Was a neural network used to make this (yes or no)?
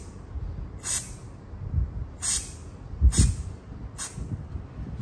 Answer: no